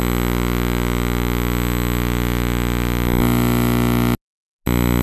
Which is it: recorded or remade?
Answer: recorded